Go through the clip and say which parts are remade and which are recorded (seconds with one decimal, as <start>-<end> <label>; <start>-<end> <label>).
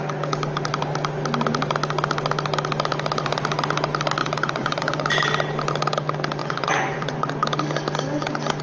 0.0-4.2 recorded; 4.2-5.0 remade; 5.0-6.4 recorded; 6.4-7.2 remade; 7.2-8.6 recorded